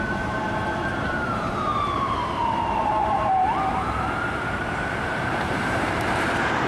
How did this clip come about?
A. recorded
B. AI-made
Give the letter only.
B